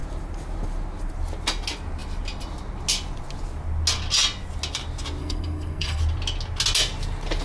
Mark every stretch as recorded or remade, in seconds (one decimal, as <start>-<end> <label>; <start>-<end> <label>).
0.0-5.2 recorded; 5.2-6.0 remade; 6.0-7.4 recorded